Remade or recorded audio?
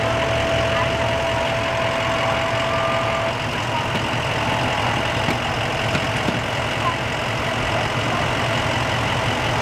recorded